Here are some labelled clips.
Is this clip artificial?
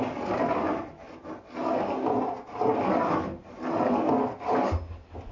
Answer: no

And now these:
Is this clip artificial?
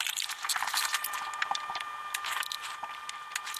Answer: no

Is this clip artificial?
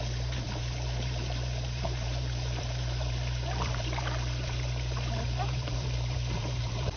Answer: yes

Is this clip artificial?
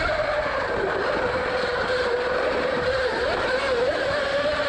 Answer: no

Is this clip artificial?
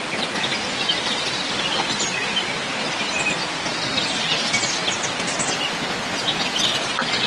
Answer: no